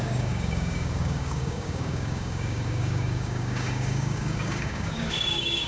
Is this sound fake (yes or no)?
yes